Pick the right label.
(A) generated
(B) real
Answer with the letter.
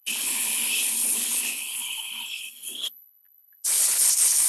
A